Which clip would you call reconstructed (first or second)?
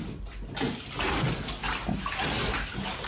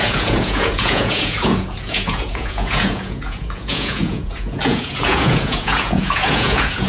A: second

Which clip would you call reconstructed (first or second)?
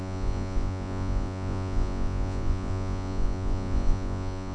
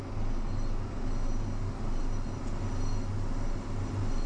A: first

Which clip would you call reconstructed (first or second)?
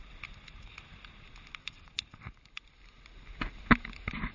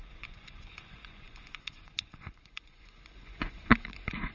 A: second